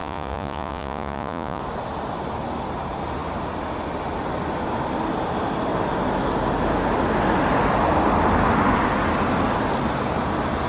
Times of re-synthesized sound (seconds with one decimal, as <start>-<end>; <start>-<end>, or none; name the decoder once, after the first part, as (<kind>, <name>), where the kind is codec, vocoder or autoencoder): 0.0-1.6 (vocoder, Vocos)